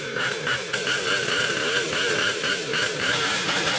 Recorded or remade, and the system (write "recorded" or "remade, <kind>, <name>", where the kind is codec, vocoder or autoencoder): recorded